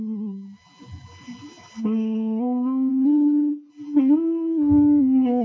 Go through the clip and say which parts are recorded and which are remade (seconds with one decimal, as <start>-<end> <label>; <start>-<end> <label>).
0.0-2.9 recorded; 2.9-3.7 remade; 3.7-5.4 recorded